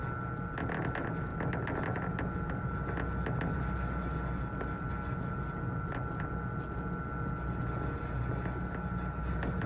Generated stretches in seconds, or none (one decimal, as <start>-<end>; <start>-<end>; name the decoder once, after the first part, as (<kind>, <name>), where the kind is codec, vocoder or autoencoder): none